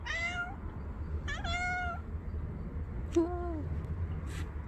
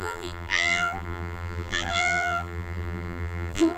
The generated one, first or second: second